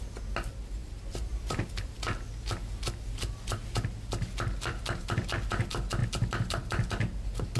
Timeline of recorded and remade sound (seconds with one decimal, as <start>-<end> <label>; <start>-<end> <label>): 0.0-7.6 recorded